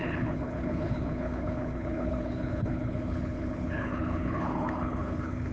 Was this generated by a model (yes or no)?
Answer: yes